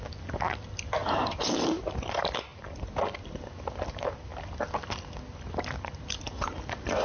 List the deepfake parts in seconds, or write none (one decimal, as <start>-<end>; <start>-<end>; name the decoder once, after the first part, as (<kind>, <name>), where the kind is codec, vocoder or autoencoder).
none